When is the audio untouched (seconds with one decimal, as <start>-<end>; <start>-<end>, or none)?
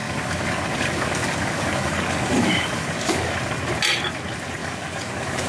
3.3-4.6